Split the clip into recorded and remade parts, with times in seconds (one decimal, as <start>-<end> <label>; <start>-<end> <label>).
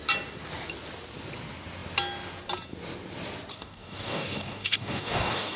0.0-3.5 recorded; 3.5-5.6 remade